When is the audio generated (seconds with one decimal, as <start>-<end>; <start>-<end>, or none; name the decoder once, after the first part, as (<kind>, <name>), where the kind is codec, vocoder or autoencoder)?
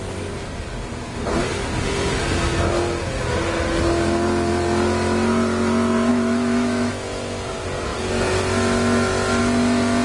6.1-6.9 (autoencoder, DAC-VAE)